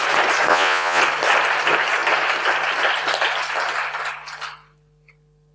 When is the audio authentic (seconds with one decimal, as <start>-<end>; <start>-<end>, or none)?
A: 0.0-0.5; 1.0-5.5